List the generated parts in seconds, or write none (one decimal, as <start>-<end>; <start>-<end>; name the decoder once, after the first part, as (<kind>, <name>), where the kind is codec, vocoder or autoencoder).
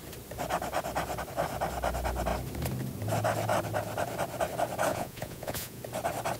4.9-5.8 (vocoder, Vocos)